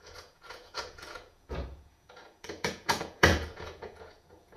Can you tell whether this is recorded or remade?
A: remade